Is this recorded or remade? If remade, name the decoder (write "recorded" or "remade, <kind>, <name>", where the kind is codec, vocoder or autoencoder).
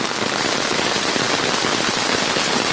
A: recorded